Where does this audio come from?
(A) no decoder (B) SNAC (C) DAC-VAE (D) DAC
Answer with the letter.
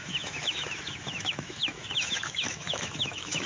C